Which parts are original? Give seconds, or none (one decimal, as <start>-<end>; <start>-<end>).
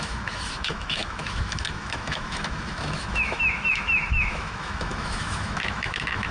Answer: none